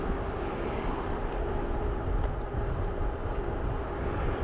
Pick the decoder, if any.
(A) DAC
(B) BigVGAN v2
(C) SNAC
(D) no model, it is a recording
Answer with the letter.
D